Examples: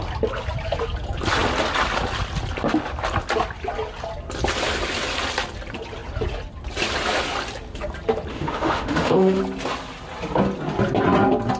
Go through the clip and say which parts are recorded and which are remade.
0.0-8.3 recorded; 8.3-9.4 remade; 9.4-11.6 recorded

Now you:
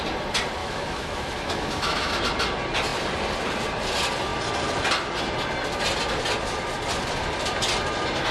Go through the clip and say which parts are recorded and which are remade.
0.0-0.6 recorded; 0.6-2.1 remade; 2.1-8.3 recorded

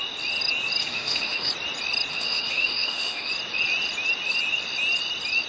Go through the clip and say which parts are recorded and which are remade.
0.0-0.8 recorded; 0.8-1.5 remade; 1.5-2.1 recorded; 2.1-3.3 remade; 3.3-5.5 recorded